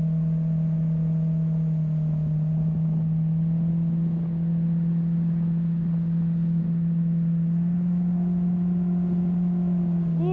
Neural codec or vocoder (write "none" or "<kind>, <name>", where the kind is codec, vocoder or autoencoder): none